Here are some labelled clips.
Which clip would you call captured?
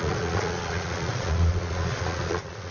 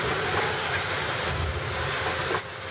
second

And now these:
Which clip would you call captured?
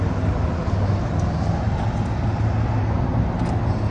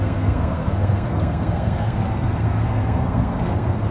first